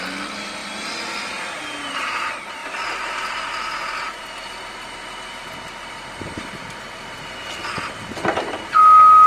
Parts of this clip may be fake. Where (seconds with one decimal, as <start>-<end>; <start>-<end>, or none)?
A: none